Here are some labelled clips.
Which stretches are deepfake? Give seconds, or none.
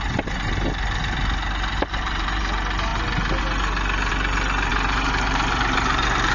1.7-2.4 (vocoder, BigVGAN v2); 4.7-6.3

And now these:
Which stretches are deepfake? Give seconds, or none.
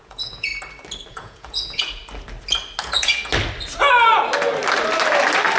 0.0-0.5 (vocoder, Vocos); 1.1-2.0; 2.8-3.3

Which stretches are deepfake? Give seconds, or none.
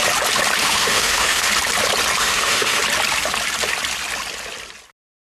0.6-1.5 (autoencoder, DAC-VAE); 2.2-2.8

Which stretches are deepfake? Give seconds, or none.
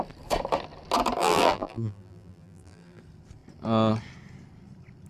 1.2-3.0 (vocoder, BigVGAN v2)